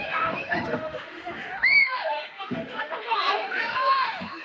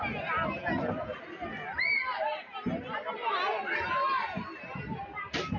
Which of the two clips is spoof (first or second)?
first